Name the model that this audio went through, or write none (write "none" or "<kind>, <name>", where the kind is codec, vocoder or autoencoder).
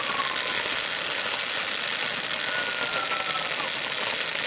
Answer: none